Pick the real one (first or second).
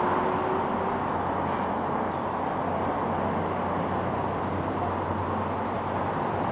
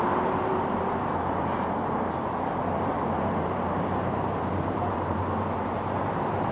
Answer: first